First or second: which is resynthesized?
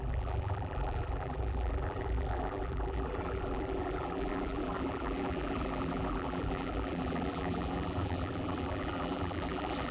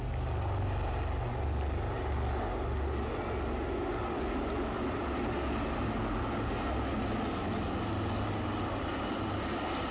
first